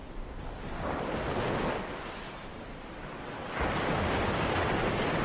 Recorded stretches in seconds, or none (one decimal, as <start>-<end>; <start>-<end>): 0.0-5.2